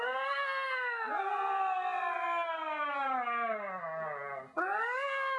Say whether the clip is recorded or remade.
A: recorded